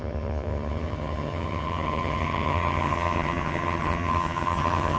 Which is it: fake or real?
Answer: fake